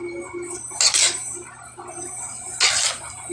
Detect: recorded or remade recorded